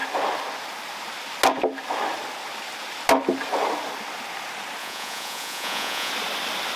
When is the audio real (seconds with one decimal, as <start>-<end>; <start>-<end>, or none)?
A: 0.0-4.8; 6.1-6.8